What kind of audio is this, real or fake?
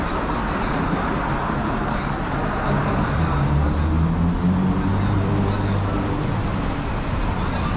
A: real